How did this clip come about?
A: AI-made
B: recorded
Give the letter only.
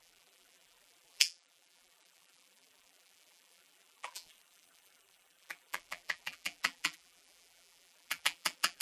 A